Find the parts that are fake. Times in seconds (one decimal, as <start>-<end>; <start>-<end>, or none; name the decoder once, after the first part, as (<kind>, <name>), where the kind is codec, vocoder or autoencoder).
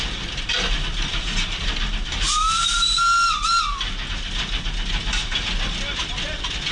1.1-1.7 (vocoder, BigVGAN v2)